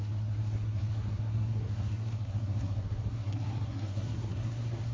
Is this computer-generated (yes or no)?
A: yes